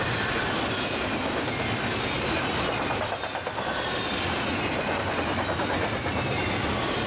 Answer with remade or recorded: recorded